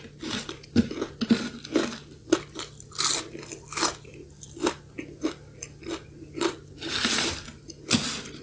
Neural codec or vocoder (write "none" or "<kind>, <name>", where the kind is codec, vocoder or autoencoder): none